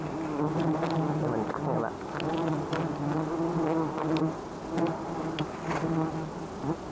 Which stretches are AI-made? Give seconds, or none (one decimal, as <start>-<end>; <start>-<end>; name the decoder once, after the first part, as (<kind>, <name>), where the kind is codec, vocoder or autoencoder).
none